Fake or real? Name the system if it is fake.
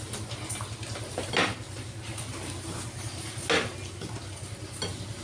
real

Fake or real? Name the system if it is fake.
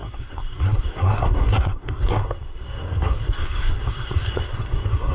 fake, codec, SNAC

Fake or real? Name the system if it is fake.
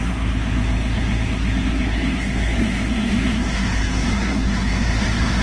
fake, codec, SNAC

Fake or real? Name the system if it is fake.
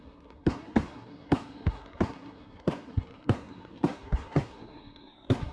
fake, codec, SNAC